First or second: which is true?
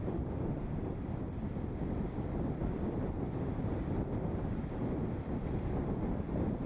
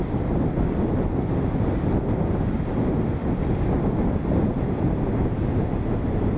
second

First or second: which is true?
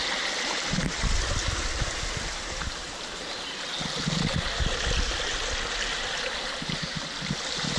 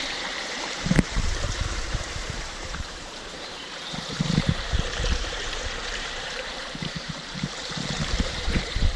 first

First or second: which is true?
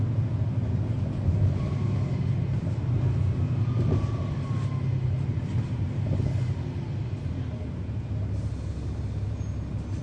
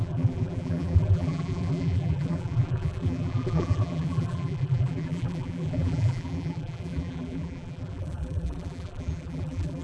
first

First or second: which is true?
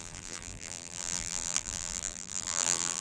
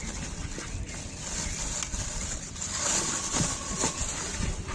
second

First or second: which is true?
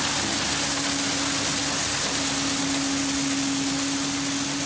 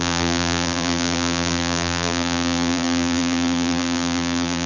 first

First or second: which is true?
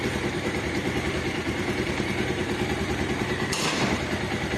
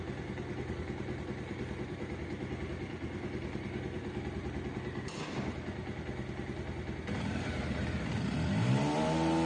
second